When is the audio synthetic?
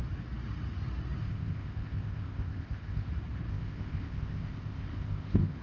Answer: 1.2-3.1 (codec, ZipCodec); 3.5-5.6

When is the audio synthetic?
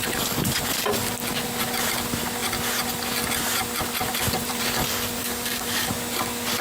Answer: 5.2-5.9 (codec, DAC)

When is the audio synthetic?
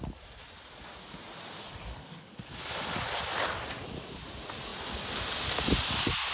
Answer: 1.6-2.5 (codec, SNAC)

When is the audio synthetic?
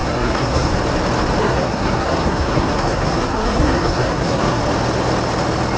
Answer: 0.0-0.7 (codec, SNAC); 1.4-4.6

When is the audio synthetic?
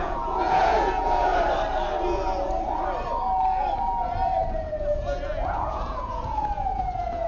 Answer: 0.0-1.3 (vocoder, Vocos); 4.5-7.3